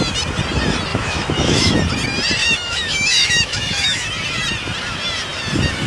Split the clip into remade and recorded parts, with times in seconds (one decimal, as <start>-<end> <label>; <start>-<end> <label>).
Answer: 0.0-0.9 recorded; 0.9-1.8 remade; 1.8-2.4 recorded; 2.4-4.1 remade; 4.1-5.9 recorded